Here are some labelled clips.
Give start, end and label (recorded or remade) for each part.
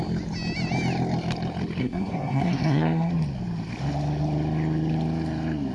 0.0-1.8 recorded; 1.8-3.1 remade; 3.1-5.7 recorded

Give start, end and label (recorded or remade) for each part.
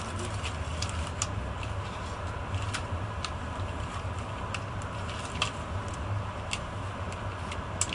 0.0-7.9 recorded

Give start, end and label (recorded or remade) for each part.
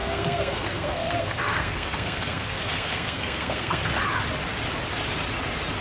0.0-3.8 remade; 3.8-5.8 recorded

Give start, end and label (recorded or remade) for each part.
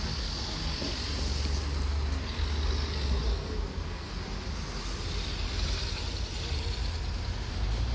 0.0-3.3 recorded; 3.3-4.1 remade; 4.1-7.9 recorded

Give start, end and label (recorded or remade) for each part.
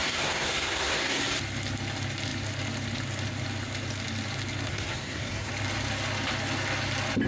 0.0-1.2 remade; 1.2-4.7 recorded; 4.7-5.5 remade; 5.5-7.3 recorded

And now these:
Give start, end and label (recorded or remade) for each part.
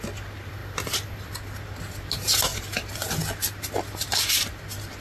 0.0-5.0 recorded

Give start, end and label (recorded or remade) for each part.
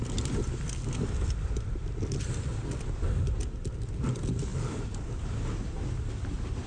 0.0-6.7 recorded